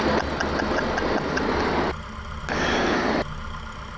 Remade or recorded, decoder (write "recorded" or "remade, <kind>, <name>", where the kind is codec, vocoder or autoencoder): recorded